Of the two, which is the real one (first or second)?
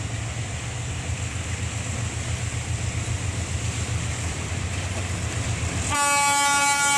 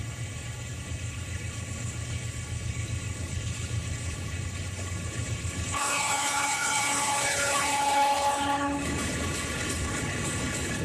first